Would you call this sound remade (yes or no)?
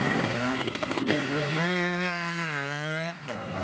yes